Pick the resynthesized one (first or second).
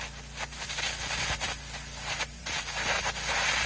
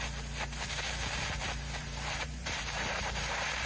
second